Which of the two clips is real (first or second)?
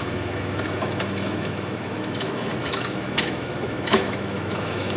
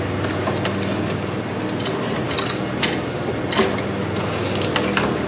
second